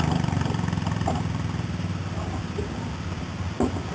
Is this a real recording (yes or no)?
yes